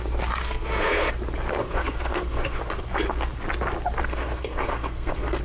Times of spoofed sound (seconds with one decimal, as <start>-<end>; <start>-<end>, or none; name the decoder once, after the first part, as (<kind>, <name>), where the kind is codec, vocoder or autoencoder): 0.4-1.1 (codec, SNAC); 1.6-2.6; 4.1-5.4